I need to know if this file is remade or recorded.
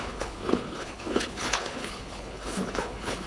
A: remade